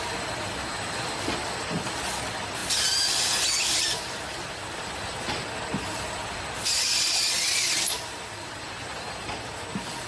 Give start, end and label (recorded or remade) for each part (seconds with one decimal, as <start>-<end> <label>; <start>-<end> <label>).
0.0-10.1 recorded